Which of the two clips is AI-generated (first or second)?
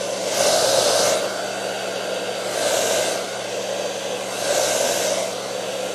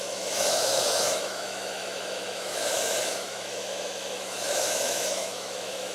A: second